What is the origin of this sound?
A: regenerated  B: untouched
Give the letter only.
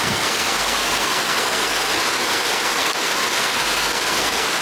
A